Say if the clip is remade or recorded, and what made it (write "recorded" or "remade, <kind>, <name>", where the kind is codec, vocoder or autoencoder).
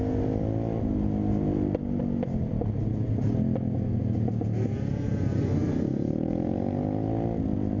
recorded